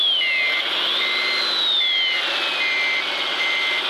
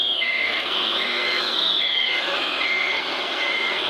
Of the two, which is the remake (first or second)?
second